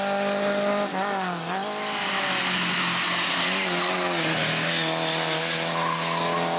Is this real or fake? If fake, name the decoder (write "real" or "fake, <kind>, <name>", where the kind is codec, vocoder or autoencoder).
real